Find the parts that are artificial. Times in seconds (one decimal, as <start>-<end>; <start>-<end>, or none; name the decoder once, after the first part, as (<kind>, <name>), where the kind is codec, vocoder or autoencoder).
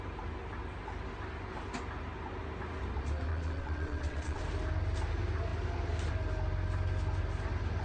3.3-4.4 (vocoder, WaveNeXt)